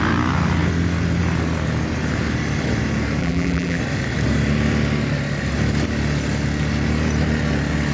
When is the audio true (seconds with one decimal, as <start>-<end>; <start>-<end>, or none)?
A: 0.0-3.2; 3.8-7.9